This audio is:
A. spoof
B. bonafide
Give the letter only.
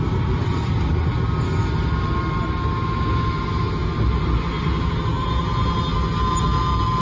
B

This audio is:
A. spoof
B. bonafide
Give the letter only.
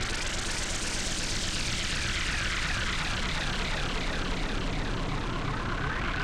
B